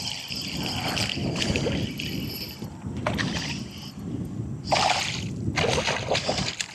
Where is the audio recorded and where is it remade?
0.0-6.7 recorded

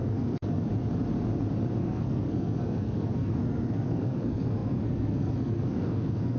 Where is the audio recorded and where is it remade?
0.0-0.7 remade; 0.7-1.8 recorded; 1.8-6.4 remade

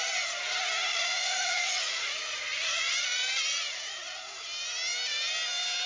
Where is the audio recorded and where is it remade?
0.0-0.9 recorded; 0.9-4.4 remade; 4.4-5.9 recorded

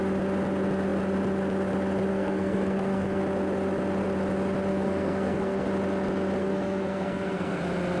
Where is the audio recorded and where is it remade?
0.0-2.1 recorded; 2.1-3.2 remade; 3.2-4.7 recorded; 4.7-5.7 remade; 5.7-6.4 recorded; 6.4-7.6 remade; 7.6-8.0 recorded

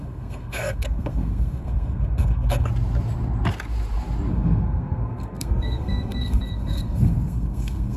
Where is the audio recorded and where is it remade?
0.0-2.7 remade; 2.7-4.3 recorded; 4.3-8.0 remade

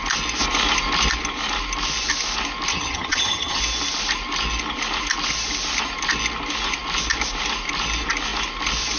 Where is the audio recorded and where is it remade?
0.0-2.7 recorded; 2.7-3.6 remade; 3.6-9.0 recorded